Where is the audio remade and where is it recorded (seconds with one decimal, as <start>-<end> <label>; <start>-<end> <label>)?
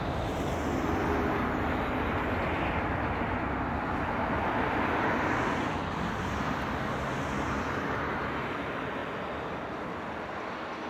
0.0-10.9 recorded